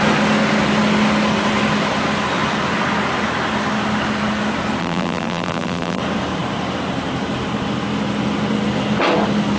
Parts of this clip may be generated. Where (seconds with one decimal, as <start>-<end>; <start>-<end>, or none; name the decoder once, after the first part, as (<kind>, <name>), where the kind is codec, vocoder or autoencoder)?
4.8-6.0 (vocoder, BigVGAN v2)